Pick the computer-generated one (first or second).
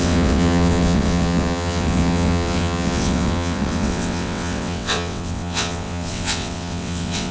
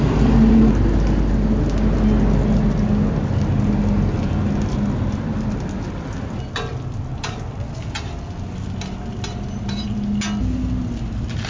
first